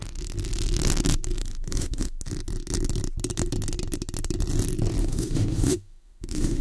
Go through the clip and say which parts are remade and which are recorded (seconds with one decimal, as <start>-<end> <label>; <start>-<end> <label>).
0.0-1.4 recorded; 1.4-2.2 remade; 2.2-5.0 recorded; 5.0-6.6 remade